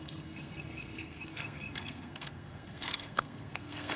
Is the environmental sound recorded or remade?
remade